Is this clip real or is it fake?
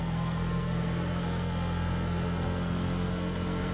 fake